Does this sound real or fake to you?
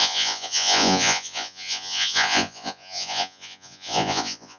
fake